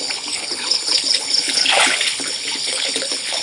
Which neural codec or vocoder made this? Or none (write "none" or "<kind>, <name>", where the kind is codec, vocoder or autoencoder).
codec, HILCodec